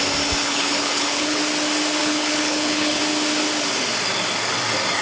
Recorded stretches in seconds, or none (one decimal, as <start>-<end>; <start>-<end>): 0.0-0.4; 1.4-2.0; 3.0-5.0